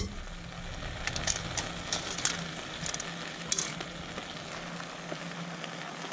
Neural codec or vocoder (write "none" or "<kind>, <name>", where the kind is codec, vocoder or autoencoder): none